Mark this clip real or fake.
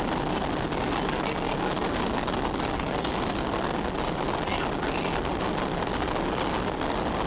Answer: real